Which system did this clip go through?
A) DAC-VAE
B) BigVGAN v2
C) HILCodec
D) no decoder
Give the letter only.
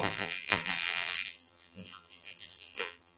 B